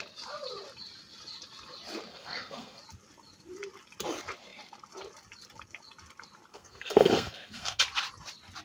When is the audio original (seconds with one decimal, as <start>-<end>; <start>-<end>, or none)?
0.0-2.1; 2.8-6.5; 7.8-8.6